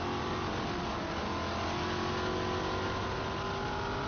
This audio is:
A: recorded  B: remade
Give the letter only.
A